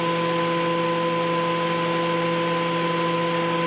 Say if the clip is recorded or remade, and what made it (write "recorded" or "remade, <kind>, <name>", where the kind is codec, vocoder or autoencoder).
recorded